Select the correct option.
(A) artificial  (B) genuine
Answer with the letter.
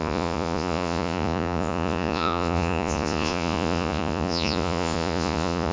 A